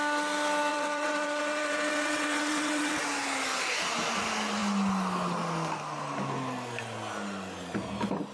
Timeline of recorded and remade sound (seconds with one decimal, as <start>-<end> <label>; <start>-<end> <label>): 0.0-0.7 recorded; 0.7-3.0 remade; 3.0-8.3 recorded